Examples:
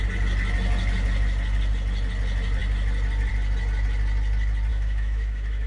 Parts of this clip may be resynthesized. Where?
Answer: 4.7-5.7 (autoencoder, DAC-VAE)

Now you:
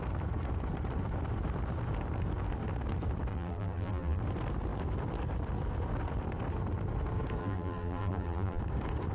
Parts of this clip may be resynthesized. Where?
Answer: 3.3-4.2 (vocoder, BigVGAN v2); 7.4-8.6

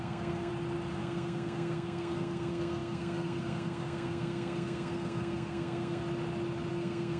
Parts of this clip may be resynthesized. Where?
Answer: 0.0-0.5 (codec, SNAC); 1.0-6.0; 6.7-7.2

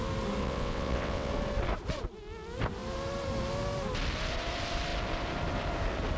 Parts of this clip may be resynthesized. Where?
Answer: 0.4-1.3 (vocoder, WaveNeXt)

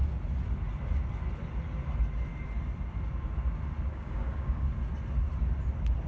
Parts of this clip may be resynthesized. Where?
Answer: 3.9-4.7 (codec, DAC)

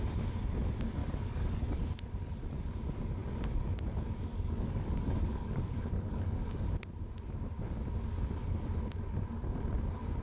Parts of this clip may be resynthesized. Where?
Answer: 1.0-1.8 (codec, DAC); 4.3-6.7

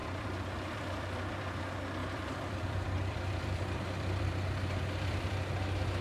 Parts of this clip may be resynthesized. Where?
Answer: 0.0-1.6 (vocoder, BigVGAN v2); 2.0-5.3